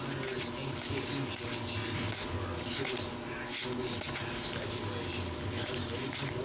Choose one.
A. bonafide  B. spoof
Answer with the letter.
A